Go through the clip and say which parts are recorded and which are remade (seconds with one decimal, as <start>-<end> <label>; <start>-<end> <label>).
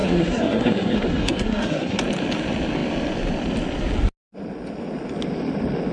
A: 0.0-2.0 remade; 2.0-5.9 recorded